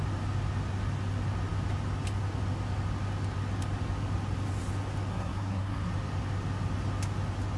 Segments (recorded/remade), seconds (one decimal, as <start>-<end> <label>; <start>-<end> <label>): 0.0-5.1 recorded; 5.1-5.9 remade; 5.9-7.6 recorded